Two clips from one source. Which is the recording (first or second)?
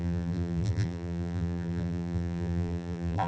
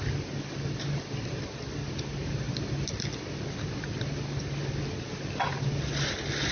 second